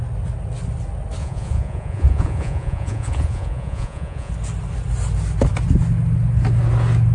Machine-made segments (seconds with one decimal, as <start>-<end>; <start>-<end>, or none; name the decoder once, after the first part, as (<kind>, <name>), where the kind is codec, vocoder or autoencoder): 1.2-4.3 (vocoder, Vocos)